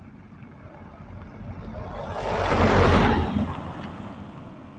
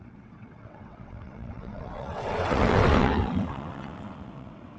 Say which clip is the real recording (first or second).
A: first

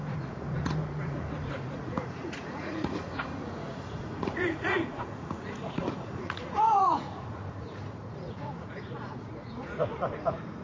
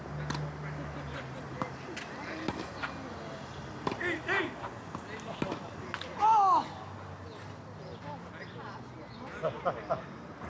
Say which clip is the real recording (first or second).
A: second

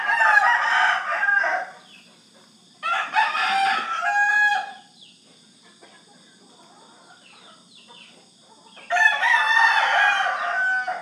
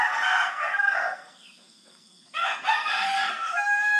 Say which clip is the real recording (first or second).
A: first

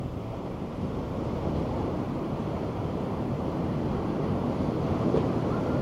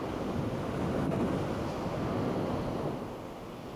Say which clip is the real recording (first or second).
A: second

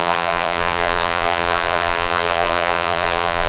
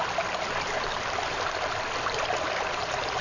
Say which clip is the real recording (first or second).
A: second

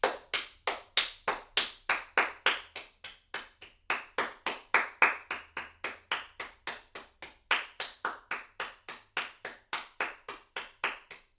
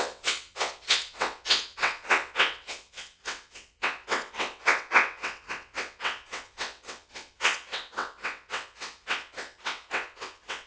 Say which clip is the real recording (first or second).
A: first